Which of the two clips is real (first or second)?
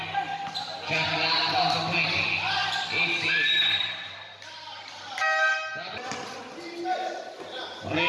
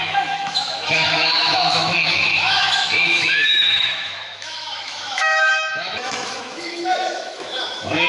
first